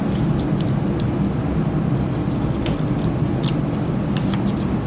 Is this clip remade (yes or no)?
no